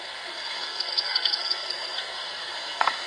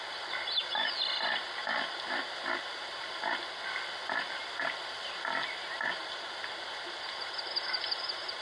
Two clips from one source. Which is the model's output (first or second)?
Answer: first